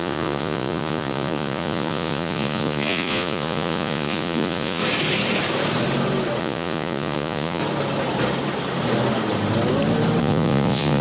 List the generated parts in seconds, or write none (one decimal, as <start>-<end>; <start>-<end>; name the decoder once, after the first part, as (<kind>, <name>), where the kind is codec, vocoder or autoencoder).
0.0-4.8 (vocoder, Vocos); 6.4-7.6; 10.2-11.0